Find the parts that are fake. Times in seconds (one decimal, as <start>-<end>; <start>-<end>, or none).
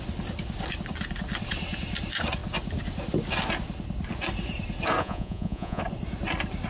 5.0-5.8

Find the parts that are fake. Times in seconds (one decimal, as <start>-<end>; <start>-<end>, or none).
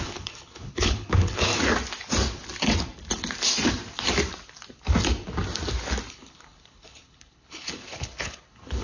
0.0-1.5; 6.1-8.8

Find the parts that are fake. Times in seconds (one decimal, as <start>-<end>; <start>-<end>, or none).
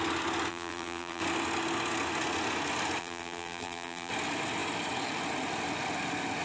0.5-1.2; 3.0-4.1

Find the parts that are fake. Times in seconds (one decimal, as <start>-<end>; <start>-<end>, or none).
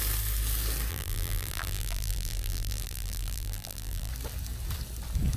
0.9-4.1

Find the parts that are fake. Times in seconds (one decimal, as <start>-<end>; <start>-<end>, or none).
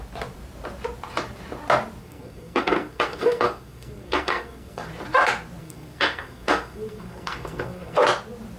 2.0-4.9; 5.6-8.0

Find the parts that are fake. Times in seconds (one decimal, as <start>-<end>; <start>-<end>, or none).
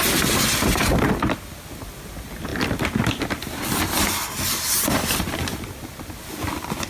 none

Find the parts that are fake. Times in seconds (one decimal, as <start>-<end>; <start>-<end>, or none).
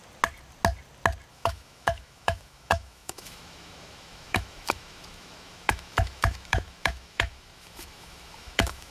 1.3-8.9